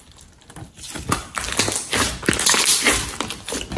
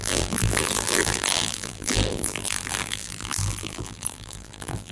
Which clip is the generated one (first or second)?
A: second